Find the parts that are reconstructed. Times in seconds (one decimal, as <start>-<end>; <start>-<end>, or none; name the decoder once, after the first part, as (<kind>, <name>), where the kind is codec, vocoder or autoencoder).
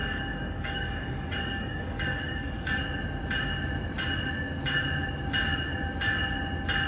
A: 0.0-2.8 (codec, DAC)